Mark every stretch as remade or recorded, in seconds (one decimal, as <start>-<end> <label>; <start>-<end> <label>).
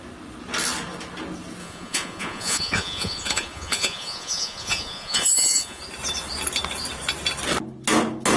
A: 0.0-1.6 recorded; 1.6-5.8 remade; 5.8-8.4 recorded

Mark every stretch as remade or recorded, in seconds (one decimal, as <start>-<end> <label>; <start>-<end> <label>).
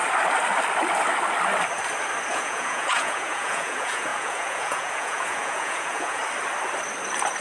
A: 0.0-2.3 recorded; 2.3-6.2 remade; 6.2-7.4 recorded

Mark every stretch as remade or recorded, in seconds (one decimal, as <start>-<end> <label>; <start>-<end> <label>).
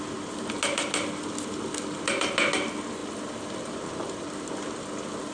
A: 0.0-5.3 recorded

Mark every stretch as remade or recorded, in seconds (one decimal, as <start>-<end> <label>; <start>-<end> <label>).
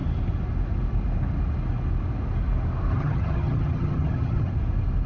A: 0.0-2.9 recorded; 2.9-4.5 remade; 4.5-5.1 recorded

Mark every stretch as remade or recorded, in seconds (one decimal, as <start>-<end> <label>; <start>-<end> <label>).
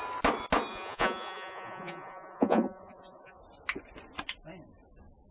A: 0.0-0.7 recorded; 0.7-3.4 remade; 3.4-5.3 recorded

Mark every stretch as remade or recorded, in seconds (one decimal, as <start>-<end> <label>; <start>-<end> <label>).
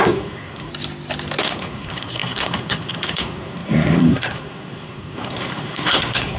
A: 0.0-0.7 remade; 0.7-1.4 recorded; 1.4-6.4 remade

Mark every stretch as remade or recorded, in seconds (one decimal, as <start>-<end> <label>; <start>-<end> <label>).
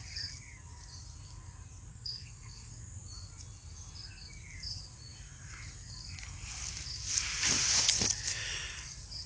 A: 0.0-1.9 recorded; 1.9-2.7 remade; 2.7-9.3 recorded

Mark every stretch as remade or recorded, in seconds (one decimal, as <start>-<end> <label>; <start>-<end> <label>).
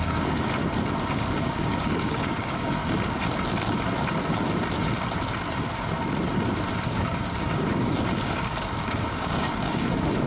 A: 0.0-0.6 remade; 0.6-1.1 recorded; 1.1-2.8 remade; 2.8-6.7 recorded; 6.7-10.3 remade